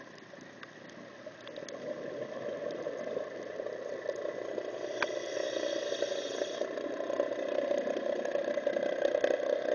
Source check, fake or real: real